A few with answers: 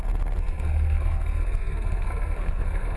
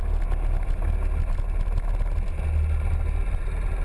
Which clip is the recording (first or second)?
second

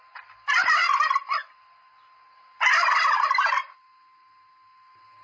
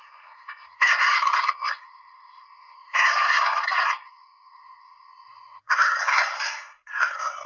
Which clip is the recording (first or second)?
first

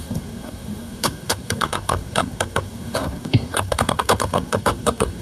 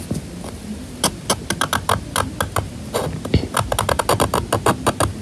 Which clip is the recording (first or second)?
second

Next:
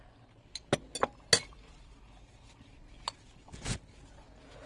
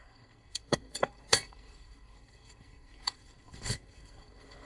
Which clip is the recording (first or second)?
first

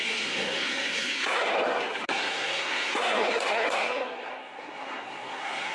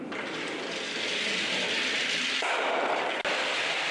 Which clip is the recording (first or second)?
second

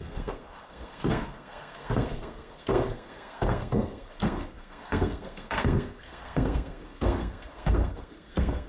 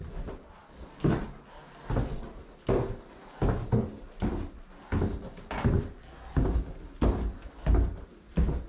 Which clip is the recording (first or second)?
second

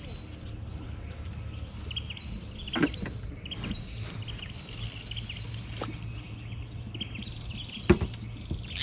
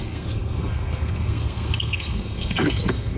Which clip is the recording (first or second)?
first